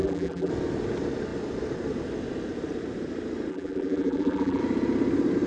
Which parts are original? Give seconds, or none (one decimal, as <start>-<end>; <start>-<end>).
0.5-3.5; 4.6-5.5